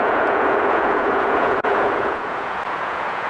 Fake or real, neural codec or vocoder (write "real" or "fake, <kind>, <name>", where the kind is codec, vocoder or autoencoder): fake, vocoder, Vocos